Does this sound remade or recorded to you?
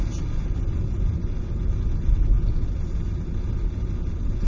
recorded